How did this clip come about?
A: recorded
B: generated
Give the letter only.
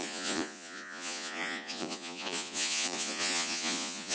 B